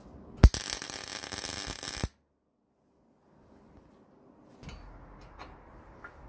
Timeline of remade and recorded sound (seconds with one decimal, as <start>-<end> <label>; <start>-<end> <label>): 0.0-6.3 recorded